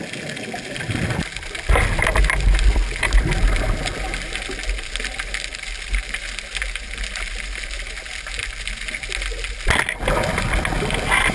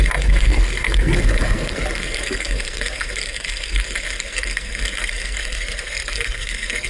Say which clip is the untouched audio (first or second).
first